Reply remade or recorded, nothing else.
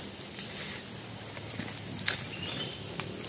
recorded